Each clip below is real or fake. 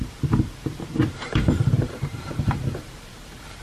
fake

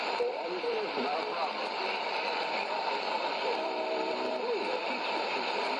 fake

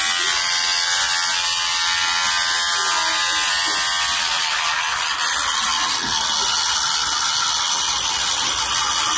real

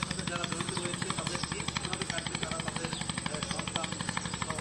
real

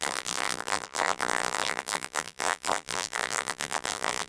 fake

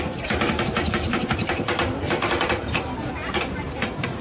fake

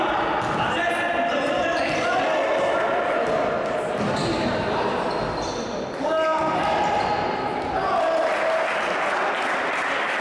real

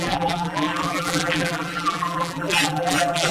fake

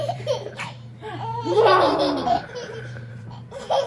fake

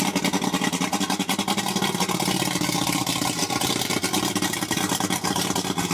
real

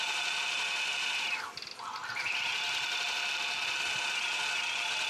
real